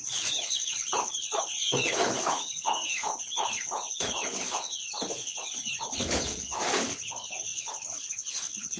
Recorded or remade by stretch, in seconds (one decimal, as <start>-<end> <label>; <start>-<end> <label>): 0.0-8.8 remade